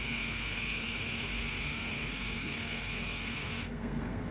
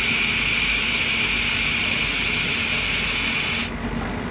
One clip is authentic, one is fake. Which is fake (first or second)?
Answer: first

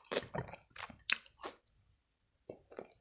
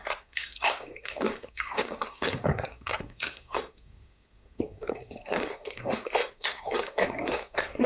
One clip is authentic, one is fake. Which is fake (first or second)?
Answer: second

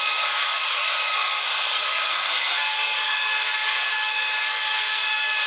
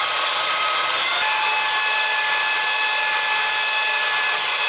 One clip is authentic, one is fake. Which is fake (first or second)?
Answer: first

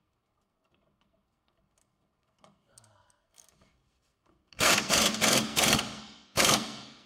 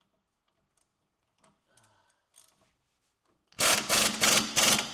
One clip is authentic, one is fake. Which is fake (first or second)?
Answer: first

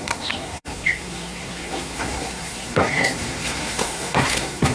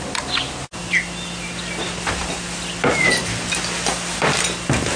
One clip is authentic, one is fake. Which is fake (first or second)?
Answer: first